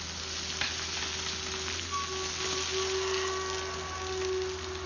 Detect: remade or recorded recorded